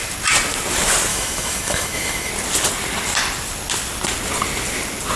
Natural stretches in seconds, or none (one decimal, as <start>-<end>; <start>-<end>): 0.0-1.1; 2.3-5.2